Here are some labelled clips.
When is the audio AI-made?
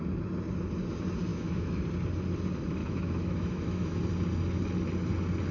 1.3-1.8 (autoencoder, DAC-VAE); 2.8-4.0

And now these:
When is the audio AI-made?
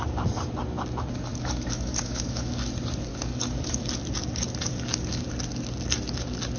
1.3-2.7 (codec, DAC); 3.1-3.8; 4.7-5.3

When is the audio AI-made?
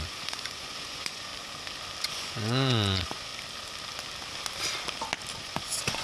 0.0-1.3 (vocoder, Vocos); 2.1-3.3; 5.4-6.0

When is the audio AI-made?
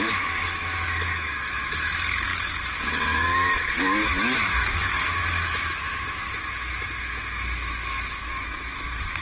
0.0-9.2 (autoencoder, DAC-VAE)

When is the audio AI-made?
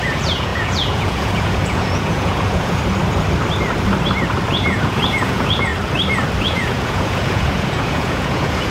0.0-2.8 (vocoder, Vocos); 4.5-5.7; 6.4-8.7